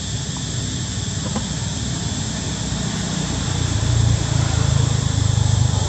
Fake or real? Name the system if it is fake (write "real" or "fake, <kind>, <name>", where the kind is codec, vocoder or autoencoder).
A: fake, vocoder, BigVGAN v2